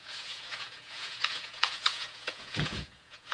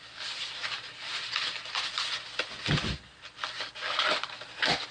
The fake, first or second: first